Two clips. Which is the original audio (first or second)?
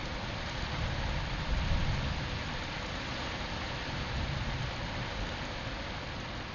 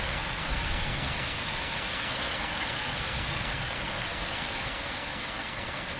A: first